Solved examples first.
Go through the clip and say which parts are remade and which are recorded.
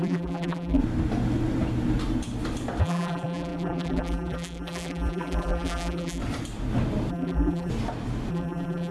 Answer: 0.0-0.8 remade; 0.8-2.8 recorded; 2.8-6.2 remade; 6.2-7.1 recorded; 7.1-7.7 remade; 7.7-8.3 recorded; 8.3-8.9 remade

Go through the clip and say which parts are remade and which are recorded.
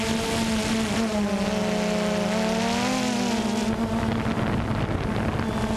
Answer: 0.0-5.8 recorded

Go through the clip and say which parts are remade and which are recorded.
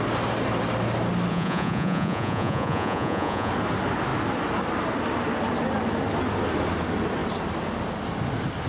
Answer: 0.0-1.3 recorded; 1.3-3.5 remade; 3.5-8.7 recorded